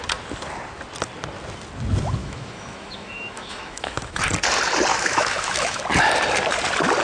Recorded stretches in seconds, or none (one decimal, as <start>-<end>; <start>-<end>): 0.0-2.2; 4.2-4.9; 5.8-7.0